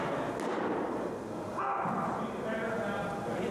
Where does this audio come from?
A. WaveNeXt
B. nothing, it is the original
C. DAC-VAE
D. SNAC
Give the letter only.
B